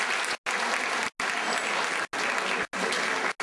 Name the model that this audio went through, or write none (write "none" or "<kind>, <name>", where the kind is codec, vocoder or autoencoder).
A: none